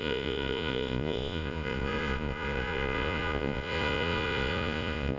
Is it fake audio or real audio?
fake